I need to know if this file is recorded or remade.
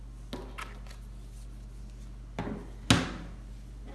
recorded